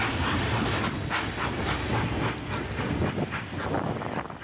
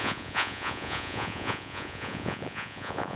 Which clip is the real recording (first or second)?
first